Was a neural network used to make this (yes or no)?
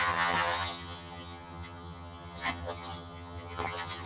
yes